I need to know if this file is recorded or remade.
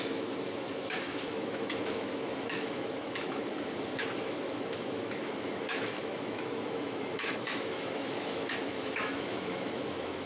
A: remade